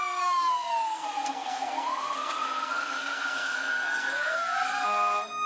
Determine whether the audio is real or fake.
fake